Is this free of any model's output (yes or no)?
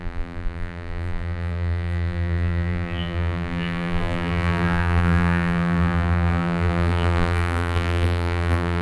no